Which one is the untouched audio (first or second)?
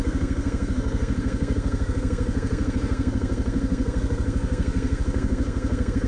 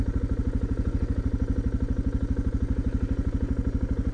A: second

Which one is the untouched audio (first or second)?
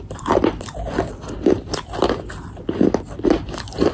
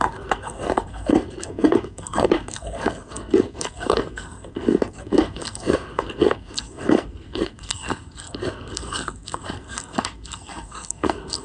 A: first